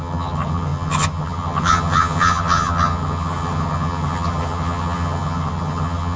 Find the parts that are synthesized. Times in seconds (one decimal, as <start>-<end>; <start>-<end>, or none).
0.0-6.2